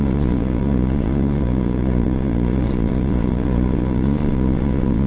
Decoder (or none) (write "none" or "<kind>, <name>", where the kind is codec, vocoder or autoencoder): vocoder, Vocos